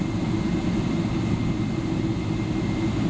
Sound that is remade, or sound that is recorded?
recorded